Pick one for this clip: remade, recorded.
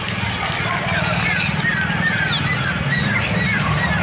recorded